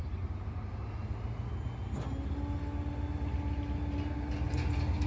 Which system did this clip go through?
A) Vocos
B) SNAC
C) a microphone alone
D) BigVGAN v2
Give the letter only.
C